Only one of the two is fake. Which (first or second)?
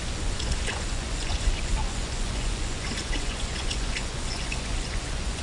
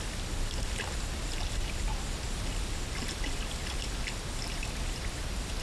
first